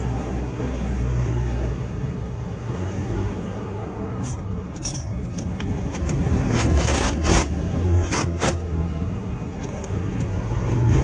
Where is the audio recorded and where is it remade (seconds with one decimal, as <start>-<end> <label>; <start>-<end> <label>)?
0.0-11.0 remade